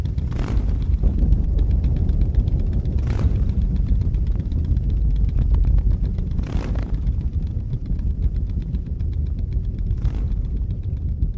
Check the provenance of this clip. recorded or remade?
remade